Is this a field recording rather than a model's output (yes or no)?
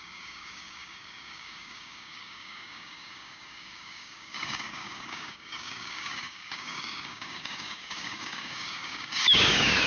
no